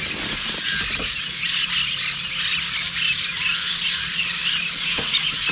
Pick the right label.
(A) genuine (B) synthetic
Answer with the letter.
A